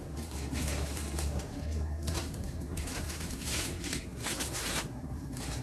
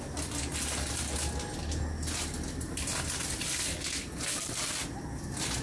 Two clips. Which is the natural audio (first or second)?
second